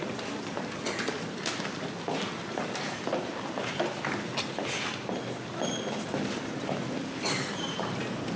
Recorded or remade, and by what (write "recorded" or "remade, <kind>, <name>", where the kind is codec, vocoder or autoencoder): recorded